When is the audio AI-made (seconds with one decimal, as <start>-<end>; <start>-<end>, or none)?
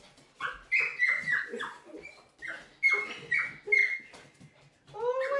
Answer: 0.9-1.4